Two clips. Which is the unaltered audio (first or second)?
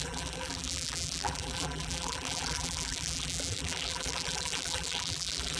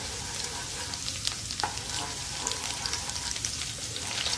second